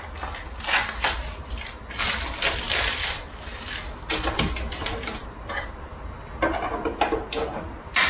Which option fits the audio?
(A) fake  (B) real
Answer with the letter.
B